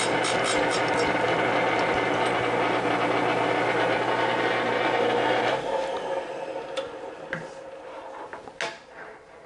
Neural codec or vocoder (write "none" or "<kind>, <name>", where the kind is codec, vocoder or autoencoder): none